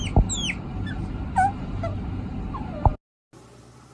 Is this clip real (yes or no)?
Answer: yes